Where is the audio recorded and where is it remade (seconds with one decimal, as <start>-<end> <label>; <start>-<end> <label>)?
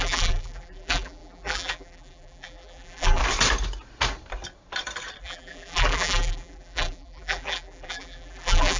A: 0.0-3.2 remade; 3.2-5.2 recorded; 5.2-8.8 remade